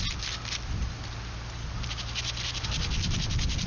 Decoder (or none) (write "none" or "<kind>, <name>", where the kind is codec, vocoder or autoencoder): none